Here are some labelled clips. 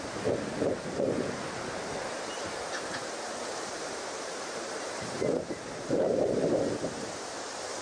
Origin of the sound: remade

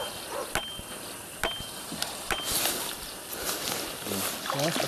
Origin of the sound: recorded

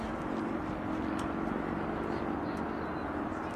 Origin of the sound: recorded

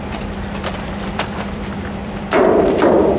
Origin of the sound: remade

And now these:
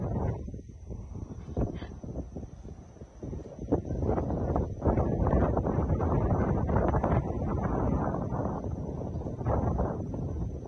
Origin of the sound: remade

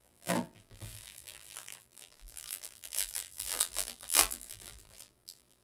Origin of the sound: remade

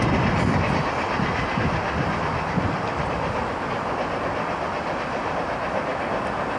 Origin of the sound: remade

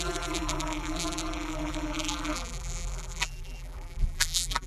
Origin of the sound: remade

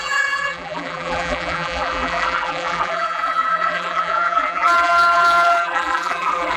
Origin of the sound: remade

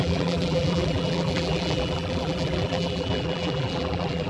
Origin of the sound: remade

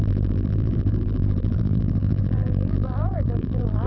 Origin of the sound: remade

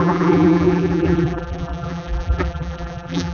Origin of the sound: remade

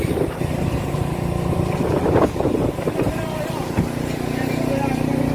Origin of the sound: remade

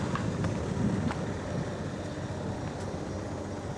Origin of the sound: recorded